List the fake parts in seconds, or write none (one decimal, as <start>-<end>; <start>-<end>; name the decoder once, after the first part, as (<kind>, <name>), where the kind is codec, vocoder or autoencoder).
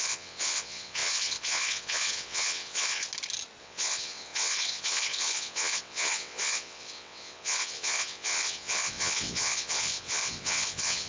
0.0-3.1 (vocoder, WaveNeXt); 3.6-11.1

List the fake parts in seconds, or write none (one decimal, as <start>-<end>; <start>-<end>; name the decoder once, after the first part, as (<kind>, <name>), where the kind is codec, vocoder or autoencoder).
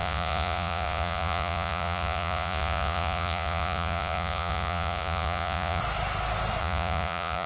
0.0-5.8 (vocoder, Vocos); 6.6-7.5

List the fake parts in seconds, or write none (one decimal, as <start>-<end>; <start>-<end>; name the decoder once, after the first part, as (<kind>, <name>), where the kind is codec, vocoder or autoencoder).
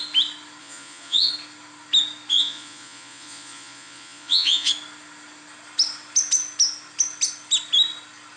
0.6-1.3 (vocoder, Vocos); 2.3-4.7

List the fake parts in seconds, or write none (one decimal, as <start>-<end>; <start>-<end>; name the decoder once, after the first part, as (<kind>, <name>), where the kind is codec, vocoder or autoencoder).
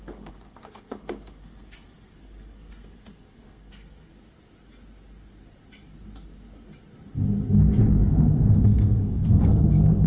0.0-4.1 (codec, SNAC); 8.1-10.1